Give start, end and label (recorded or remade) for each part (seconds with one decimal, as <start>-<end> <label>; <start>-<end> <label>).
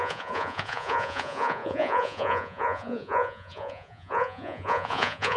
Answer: 0.0-5.4 remade